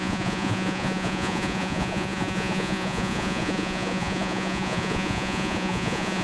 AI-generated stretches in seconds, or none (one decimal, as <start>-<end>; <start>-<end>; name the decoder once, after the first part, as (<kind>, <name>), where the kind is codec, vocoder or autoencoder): 0.0-6.2 (vocoder, Vocos)